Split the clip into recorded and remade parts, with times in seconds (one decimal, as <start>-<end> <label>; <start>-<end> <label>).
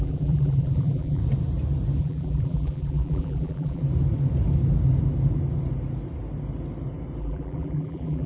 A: 0.0-1.2 remade; 1.2-2.0 recorded; 2.0-3.8 remade; 3.8-7.2 recorded; 7.2-8.3 remade